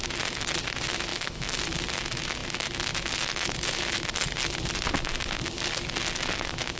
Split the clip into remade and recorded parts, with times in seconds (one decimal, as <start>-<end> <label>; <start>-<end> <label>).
0.0-1.1 recorded; 1.1-1.6 remade; 1.6-6.8 recorded